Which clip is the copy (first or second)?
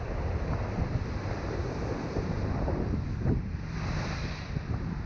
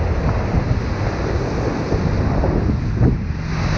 first